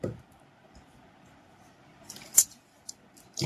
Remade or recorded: recorded